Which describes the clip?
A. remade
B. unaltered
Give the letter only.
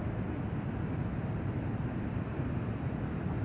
B